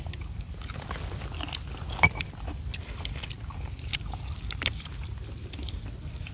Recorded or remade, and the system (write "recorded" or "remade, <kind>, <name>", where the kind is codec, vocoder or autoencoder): recorded